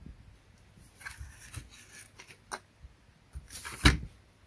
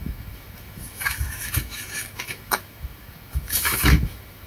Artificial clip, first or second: second